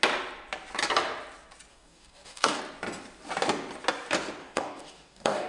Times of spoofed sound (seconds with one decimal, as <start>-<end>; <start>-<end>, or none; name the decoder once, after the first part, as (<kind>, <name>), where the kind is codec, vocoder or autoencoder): 1.7-2.6 (codec, DAC); 4.4-5.5